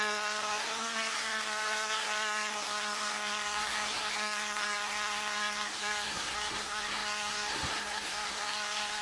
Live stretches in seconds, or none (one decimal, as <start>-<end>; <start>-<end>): none